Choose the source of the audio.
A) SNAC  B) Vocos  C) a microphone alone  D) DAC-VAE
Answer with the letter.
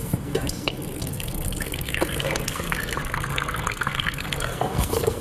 A